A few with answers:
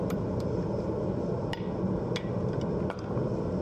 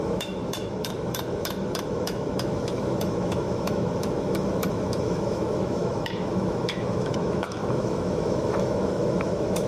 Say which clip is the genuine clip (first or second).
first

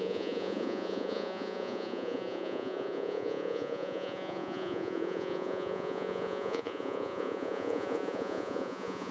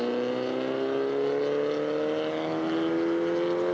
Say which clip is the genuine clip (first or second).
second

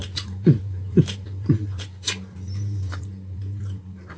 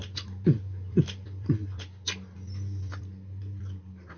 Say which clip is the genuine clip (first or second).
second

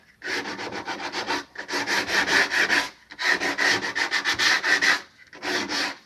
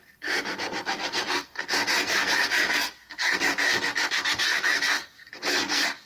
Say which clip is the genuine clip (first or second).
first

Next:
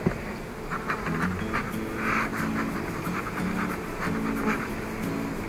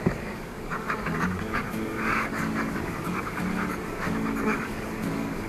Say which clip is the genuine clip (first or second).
first